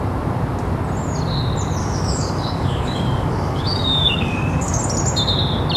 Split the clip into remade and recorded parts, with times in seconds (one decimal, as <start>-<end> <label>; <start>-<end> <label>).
0.0-1.8 recorded; 1.8-4.8 remade; 4.8-5.8 recorded